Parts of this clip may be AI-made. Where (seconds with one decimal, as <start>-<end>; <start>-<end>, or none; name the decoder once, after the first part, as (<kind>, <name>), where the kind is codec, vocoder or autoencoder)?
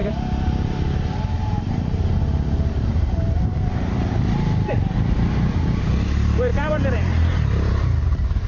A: 0.0-4.7 (vocoder, BigVGAN v2); 6.5-7.7